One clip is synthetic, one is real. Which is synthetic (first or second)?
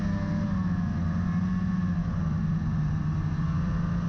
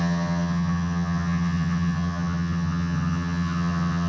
second